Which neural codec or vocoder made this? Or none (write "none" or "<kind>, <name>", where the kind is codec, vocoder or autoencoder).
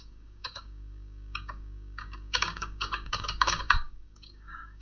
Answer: codec, DAC